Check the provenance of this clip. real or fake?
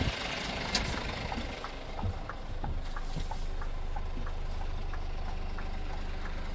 real